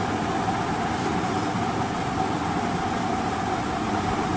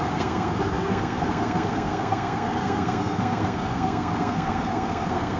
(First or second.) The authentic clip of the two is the first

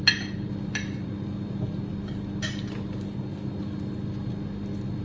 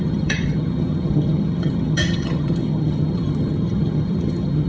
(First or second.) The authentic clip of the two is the first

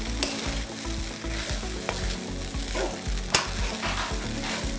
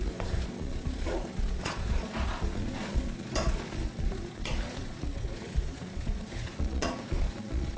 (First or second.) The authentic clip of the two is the first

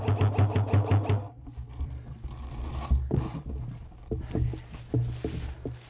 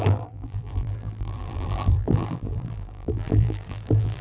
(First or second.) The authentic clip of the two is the first